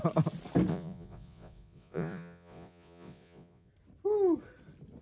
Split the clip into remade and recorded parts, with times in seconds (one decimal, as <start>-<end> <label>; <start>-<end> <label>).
0.0-0.7 recorded; 0.7-3.7 remade; 3.7-5.0 recorded